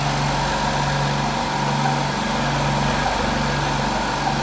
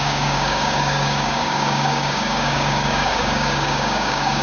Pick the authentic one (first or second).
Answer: first